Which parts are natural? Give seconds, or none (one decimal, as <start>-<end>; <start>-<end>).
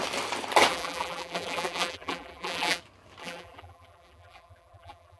0.0-0.7; 2.8-3.2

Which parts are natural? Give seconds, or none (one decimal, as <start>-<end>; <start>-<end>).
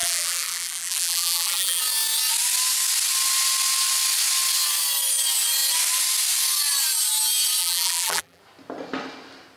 1.8-7.6; 8.4-9.6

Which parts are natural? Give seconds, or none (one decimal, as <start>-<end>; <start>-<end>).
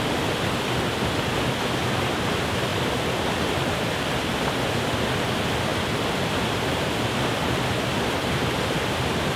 0.0-9.4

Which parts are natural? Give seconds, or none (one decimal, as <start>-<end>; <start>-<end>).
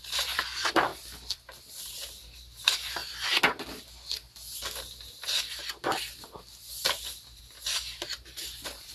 0.9-1.8; 3.0-7.4